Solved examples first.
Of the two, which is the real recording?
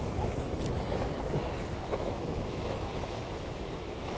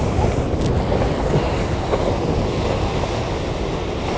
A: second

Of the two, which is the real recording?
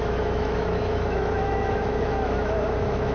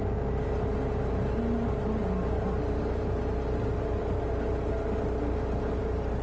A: second